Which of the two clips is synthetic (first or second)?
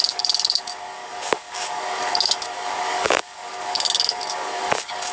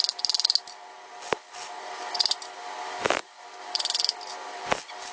first